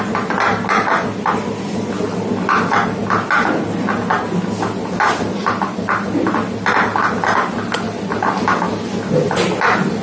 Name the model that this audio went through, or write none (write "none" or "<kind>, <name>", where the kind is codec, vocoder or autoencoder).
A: none